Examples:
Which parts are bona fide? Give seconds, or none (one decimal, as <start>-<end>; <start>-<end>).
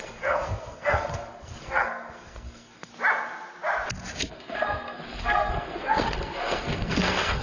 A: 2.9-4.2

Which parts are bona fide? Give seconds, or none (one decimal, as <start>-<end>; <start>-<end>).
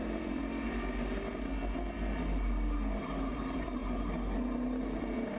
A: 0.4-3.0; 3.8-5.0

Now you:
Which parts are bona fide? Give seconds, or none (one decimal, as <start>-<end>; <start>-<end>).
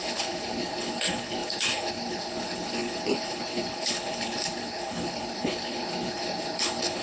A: none